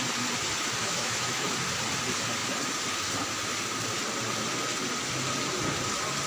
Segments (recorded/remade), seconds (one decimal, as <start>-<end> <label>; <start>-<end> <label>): 0.0-0.8 recorded; 0.8-1.5 remade; 1.5-6.3 recorded